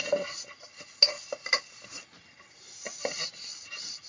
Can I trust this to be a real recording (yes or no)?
yes